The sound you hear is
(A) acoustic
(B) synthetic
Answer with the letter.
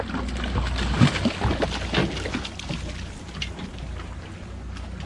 A